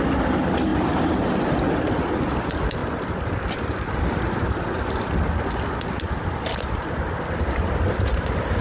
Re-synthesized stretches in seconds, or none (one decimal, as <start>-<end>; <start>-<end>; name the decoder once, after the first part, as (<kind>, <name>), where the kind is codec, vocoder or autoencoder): 0.7-1.7 (vocoder, BigVGAN v2); 2.8-5.8